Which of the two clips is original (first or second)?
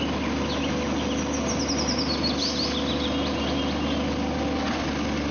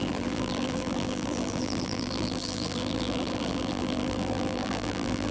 first